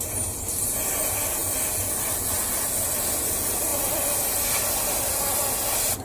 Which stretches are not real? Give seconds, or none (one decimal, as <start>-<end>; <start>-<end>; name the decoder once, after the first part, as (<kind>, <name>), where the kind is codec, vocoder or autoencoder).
none